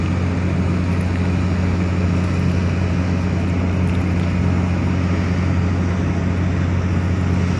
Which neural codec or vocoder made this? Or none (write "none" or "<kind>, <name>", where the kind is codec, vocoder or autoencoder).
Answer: none